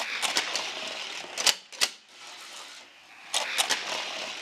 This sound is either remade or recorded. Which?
recorded